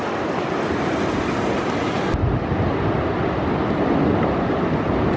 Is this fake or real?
real